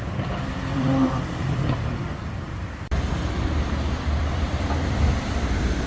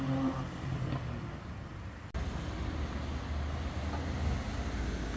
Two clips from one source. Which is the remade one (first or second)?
first